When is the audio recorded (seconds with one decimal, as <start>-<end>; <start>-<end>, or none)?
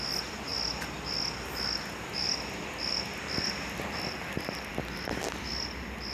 0.0-6.1